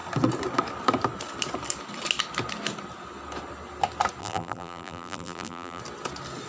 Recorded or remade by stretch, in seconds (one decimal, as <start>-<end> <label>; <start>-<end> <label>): 0.0-4.2 recorded; 4.2-5.8 remade; 5.8-6.5 recorded